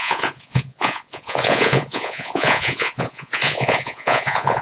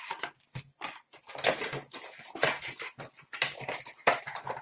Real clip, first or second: second